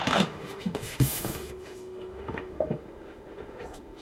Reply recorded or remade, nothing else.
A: remade